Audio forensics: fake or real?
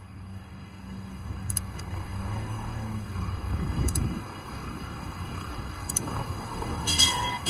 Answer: fake